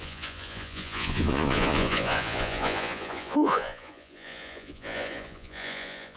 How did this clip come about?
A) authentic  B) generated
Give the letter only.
B